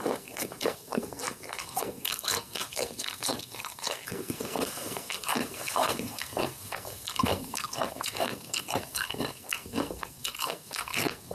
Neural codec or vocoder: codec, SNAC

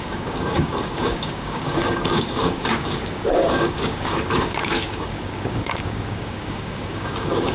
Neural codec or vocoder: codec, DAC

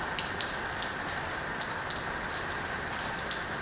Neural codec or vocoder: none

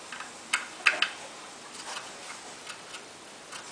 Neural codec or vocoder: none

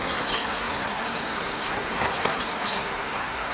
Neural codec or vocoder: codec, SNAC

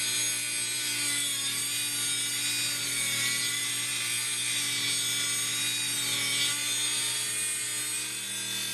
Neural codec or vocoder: none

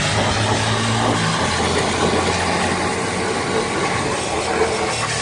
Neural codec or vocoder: none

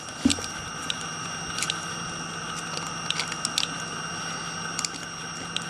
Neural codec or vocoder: none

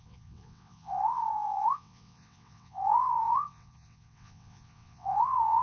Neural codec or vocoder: vocoder, WaveNeXt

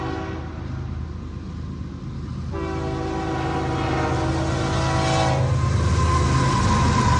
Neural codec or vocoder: none